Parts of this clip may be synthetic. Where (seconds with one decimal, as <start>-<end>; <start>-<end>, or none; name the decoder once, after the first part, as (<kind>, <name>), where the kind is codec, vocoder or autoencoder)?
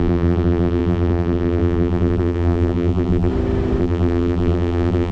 0.0-3.3 (vocoder, BigVGAN v2); 3.8-5.1